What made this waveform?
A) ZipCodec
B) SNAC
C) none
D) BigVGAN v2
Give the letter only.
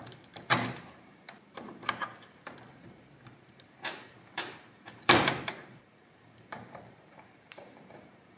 D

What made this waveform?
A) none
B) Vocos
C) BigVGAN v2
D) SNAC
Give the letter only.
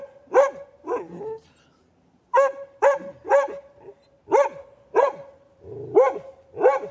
A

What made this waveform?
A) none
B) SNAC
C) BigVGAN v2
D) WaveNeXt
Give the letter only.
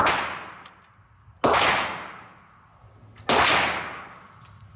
A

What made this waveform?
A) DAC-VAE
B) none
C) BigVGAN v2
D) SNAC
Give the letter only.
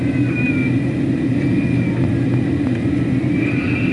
B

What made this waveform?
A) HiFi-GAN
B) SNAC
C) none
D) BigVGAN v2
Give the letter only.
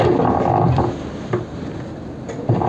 C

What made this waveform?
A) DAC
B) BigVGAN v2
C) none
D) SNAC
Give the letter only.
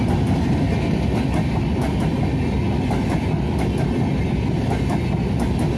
C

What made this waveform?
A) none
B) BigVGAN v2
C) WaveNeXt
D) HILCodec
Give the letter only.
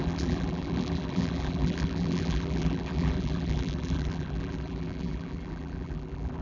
B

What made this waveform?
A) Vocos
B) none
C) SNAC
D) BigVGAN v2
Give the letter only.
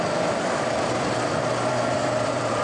D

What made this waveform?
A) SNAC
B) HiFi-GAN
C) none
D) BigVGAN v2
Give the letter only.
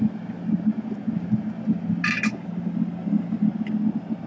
C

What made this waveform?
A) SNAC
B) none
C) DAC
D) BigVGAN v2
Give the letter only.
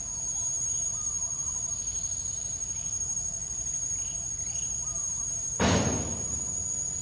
B